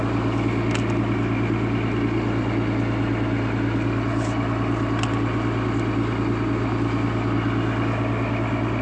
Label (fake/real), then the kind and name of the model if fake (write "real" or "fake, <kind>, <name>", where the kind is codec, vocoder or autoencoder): real